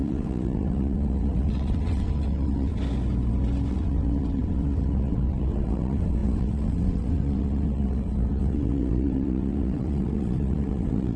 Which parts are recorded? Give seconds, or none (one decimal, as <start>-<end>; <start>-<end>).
2.7-3.7